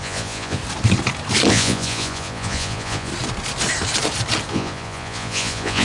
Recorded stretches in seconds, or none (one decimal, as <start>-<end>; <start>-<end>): 0.6-1.5; 3.1-4.5